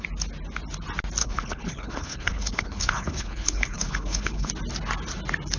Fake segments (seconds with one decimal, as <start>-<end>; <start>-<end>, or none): 1.2-4.5